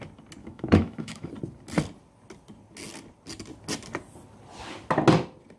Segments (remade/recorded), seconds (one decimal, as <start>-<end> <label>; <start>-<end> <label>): 0.0-0.4 recorded; 0.4-1.3 remade; 1.3-5.6 recorded